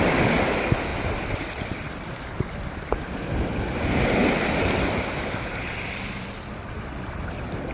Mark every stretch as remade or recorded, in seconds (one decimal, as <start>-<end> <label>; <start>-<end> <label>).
0.0-7.7 recorded